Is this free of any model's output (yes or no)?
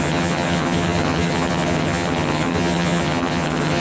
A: no